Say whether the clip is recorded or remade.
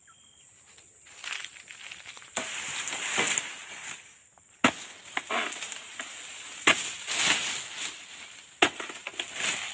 recorded